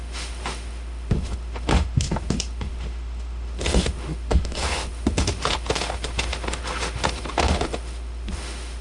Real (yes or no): no